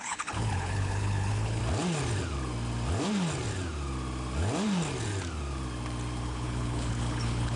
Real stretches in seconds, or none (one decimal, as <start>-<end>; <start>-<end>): 1.6-6.2